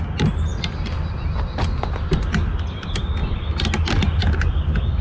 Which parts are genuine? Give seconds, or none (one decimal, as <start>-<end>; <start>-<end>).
0.0-5.0